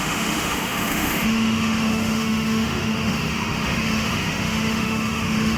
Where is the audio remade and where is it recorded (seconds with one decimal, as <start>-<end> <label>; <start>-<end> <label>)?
0.0-5.6 remade